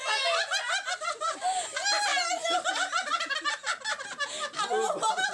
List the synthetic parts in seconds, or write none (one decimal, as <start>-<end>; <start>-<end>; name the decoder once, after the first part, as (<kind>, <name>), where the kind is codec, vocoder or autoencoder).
none